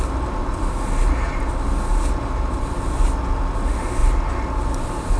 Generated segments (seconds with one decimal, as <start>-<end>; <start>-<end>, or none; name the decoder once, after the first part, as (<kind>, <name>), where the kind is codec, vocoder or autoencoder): none

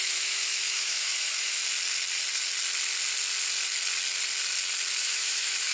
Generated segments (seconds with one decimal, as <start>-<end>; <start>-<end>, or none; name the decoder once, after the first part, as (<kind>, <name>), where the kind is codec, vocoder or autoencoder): 0.0-1.6 (autoencoder, DAC-VAE); 5.0-5.7

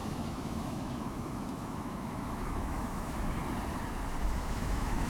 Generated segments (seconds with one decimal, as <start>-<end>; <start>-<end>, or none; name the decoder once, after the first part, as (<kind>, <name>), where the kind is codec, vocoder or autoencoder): 0.0-3.4 (autoencoder, DAC-VAE); 4.2-5.1

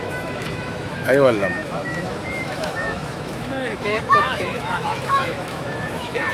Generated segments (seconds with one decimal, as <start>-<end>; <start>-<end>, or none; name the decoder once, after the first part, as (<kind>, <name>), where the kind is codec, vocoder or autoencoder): 0.0-6.3 (autoencoder, DAC-VAE)

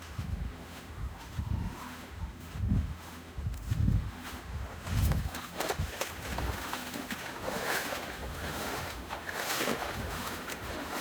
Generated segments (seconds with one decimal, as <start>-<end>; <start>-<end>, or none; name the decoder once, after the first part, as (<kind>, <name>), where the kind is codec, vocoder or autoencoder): 0.0-11.0 (autoencoder, DAC-VAE)

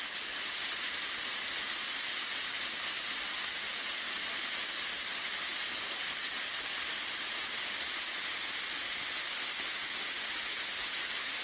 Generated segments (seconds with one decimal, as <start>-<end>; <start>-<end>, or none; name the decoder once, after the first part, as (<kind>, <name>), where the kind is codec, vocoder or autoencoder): none

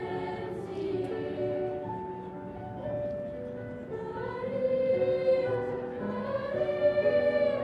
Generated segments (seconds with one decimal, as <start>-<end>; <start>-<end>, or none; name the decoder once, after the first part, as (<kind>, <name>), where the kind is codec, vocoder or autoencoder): none

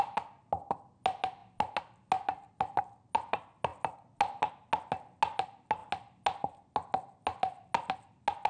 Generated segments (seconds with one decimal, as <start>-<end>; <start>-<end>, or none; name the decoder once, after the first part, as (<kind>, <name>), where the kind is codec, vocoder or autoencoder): none